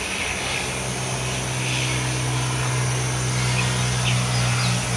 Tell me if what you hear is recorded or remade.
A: recorded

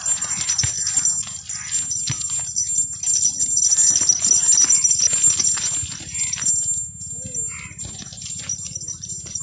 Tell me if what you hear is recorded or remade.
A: recorded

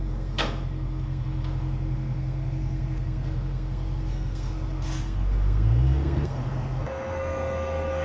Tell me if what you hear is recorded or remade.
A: remade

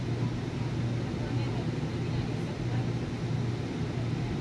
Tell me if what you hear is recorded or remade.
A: recorded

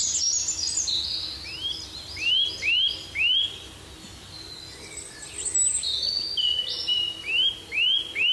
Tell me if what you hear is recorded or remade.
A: recorded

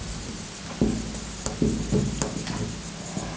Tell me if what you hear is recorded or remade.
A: recorded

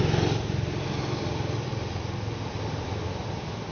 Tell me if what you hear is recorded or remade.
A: recorded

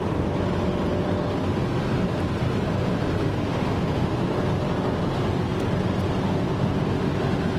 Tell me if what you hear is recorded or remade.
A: recorded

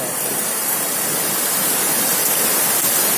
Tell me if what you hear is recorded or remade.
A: recorded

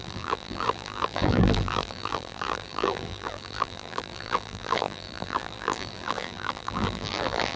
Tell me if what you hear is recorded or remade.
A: remade